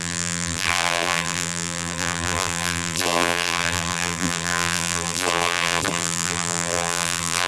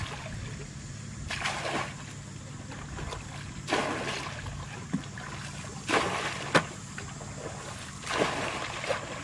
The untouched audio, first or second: second